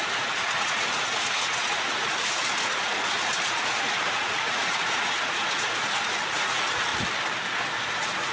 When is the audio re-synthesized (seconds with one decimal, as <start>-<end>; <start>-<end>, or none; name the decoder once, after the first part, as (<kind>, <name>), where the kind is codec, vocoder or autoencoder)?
0.0-6.9 (vocoder, Vocos); 7.9-8.3